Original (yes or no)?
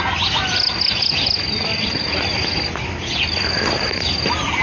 yes